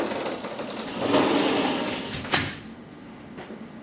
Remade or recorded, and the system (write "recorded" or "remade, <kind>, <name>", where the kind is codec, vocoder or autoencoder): recorded